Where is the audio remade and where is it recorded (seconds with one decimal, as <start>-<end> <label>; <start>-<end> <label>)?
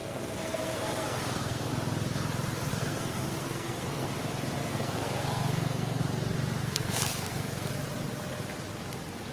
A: 0.0-1.7 remade; 1.7-2.7 recorded; 2.7-4.1 remade; 4.1-4.6 recorded; 4.6-6.0 remade; 6.0-6.6 recorded; 6.6-7.7 remade; 7.7-9.3 recorded